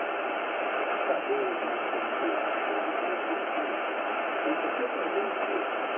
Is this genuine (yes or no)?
yes